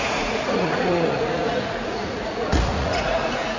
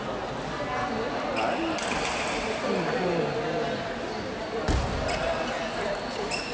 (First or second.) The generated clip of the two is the first